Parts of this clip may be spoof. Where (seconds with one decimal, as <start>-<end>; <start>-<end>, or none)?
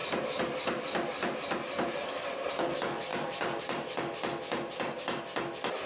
0.0-2.5; 3.1-4.0